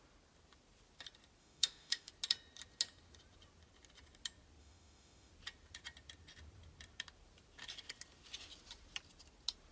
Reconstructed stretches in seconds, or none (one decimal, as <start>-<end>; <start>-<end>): 1.4-2.1; 4.6-5.3